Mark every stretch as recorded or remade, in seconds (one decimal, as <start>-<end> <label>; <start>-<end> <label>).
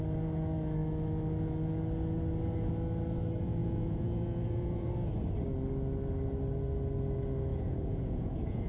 0.0-3.6 recorded; 3.6-4.9 remade; 4.9-7.5 recorded; 7.5-8.7 remade